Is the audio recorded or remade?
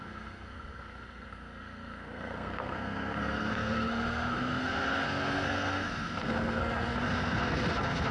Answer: remade